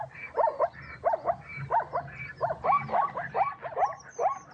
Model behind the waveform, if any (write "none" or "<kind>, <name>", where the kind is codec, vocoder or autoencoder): none